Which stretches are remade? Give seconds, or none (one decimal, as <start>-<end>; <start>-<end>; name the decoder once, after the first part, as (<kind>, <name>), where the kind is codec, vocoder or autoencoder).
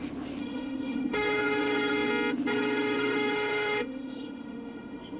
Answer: 0.4-2.1 (autoencoder, DAC-VAE); 2.5-5.2